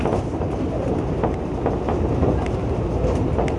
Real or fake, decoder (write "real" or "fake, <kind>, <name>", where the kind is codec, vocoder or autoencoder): real